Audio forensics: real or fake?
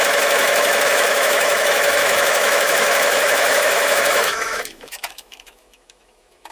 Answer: fake